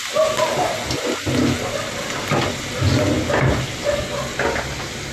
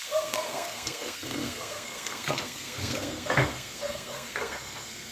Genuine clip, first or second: first